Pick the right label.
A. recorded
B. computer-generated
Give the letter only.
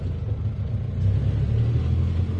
A